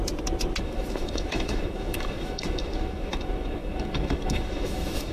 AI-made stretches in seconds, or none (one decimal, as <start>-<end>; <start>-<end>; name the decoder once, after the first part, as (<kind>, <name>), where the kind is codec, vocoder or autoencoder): 0.6-5.1 (autoencoder, DAC-VAE)